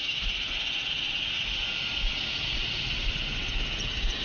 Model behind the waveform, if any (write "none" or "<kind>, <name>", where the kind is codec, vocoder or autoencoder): none